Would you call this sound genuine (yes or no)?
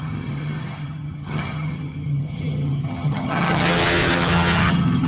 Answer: no